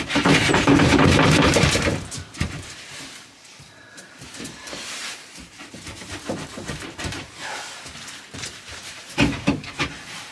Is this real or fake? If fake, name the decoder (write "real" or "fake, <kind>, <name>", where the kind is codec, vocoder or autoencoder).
fake, vocoder, BigVGAN v2